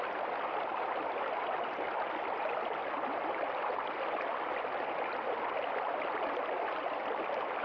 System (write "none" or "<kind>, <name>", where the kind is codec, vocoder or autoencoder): none